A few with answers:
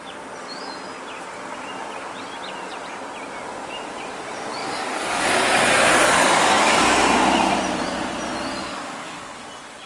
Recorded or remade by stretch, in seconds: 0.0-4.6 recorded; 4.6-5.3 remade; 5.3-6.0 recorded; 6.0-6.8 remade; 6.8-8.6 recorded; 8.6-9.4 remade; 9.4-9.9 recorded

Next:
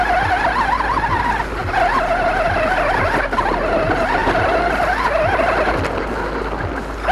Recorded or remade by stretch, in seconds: 0.0-7.1 recorded

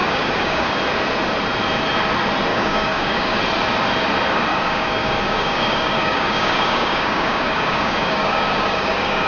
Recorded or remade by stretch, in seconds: 0.0-0.7 remade; 0.7-2.5 recorded; 2.5-3.4 remade; 3.4-4.5 recorded; 4.5-9.3 remade